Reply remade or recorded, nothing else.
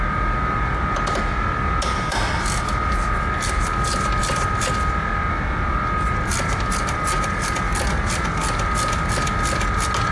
recorded